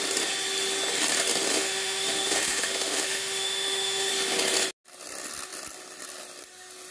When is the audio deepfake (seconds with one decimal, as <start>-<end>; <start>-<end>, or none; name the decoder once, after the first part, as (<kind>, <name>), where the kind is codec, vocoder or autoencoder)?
1.5-4.1 (autoencoder, DAC-VAE)